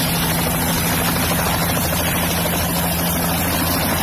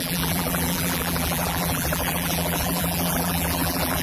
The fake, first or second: second